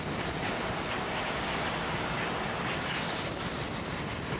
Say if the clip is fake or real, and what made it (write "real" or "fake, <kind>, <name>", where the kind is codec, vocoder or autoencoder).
real